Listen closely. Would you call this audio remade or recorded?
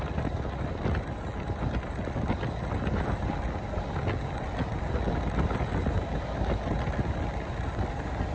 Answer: recorded